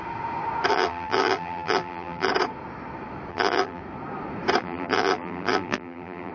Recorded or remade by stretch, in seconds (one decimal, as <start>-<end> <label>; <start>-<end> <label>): 0.0-0.7 recorded; 0.7-2.3 remade; 2.3-3.3 recorded; 3.3-3.8 remade; 3.8-4.6 recorded; 4.6-6.3 remade

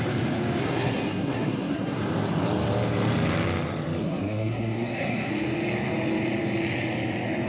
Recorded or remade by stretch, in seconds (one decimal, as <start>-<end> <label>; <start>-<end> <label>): 0.0-0.6 recorded; 0.6-2.0 remade; 2.0-4.0 recorded; 4.0-5.3 remade; 5.3-7.5 recorded

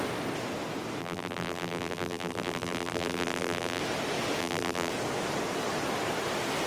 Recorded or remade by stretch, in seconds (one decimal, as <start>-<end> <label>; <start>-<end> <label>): 0.0-1.0 recorded; 1.0-3.8 remade; 3.8-4.4 recorded; 4.4-4.9 remade; 4.9-6.7 recorded

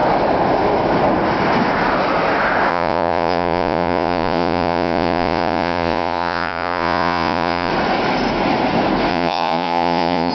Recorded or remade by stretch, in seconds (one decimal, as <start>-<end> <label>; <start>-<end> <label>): 0.0-2.7 recorded; 2.7-7.7 remade; 7.7-9.1 recorded; 9.1-10.3 remade

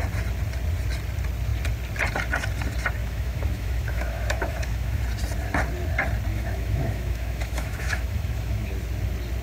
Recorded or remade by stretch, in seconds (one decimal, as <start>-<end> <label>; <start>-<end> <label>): 0.0-3.0 recorded; 3.0-5.0 remade; 5.0-6.3 recorded; 6.3-8.7 remade; 8.7-9.4 recorded